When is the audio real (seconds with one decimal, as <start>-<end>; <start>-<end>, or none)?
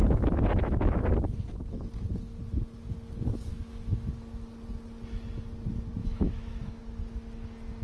1.1-3.5; 4.1-6.0; 6.8-7.8